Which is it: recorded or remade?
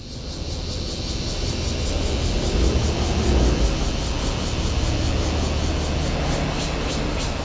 recorded